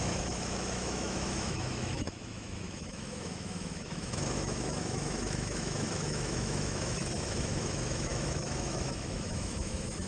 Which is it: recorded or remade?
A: remade